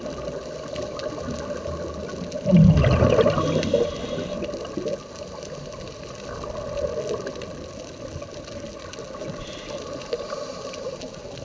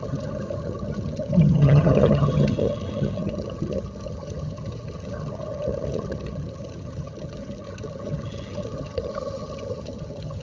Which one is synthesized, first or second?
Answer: second